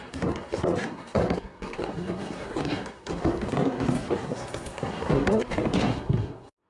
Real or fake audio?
fake